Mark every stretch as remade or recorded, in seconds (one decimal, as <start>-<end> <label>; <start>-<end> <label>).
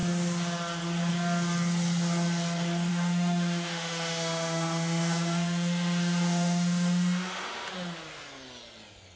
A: 0.0-2.9 recorded; 2.9-7.7 remade; 7.7-9.2 recorded